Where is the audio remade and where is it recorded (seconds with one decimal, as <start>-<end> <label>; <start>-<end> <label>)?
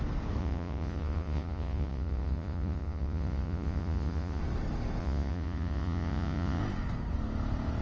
0.0-0.4 recorded; 0.4-4.4 remade; 4.4-5.0 recorded; 5.0-6.6 remade; 6.6-7.8 recorded